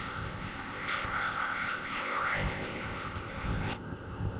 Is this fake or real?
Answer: fake